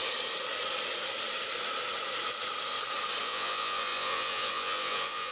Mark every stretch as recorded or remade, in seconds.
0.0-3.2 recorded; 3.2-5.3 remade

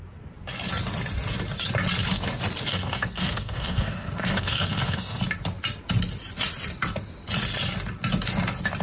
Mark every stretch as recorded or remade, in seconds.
0.0-2.7 recorded; 2.7-5.2 remade; 5.2-8.8 recorded

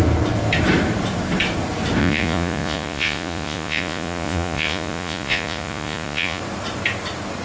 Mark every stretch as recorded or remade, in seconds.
0.0-2.0 recorded; 2.0-6.4 remade; 6.4-7.4 recorded